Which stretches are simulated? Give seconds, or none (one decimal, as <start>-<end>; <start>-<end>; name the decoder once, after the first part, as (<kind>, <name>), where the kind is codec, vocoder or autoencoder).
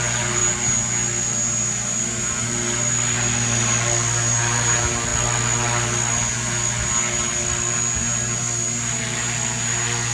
none